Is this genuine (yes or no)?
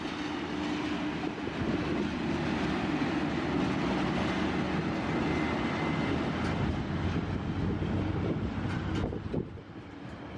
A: yes